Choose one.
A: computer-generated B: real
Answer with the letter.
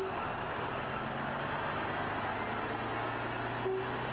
B